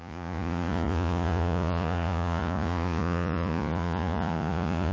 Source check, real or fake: fake